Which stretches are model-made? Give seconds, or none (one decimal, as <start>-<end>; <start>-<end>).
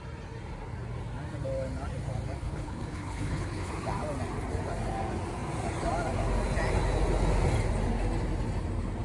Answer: 2.4-3.7